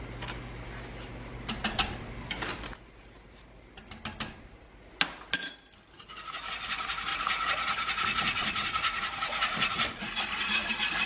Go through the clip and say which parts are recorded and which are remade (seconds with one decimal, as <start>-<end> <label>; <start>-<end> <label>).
0.0-7.1 recorded; 7.1-10.7 remade; 10.7-11.1 recorded